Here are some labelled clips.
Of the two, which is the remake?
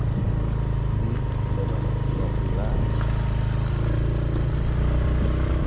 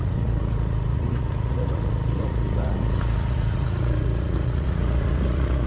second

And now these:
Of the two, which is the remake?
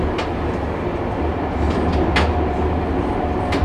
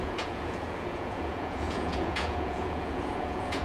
second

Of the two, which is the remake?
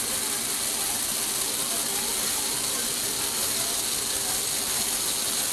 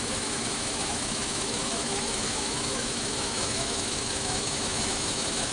second